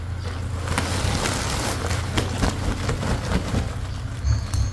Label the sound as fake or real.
real